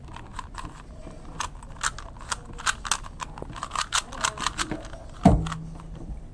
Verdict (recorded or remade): recorded